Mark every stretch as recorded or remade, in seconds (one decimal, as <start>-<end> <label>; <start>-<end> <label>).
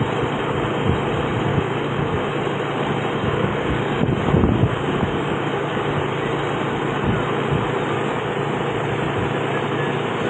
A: 0.0-1.5 recorded; 1.5-2.3 remade; 2.3-3.2 recorded; 3.2-4.0 remade; 4.0-4.6 recorded; 4.6-5.9 remade; 5.9-10.3 recorded